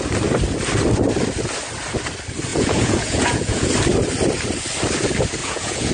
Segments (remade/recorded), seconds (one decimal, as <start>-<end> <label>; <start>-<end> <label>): 0.0-2.5 recorded; 2.5-3.7 remade; 3.7-5.4 recorded; 5.4-5.9 remade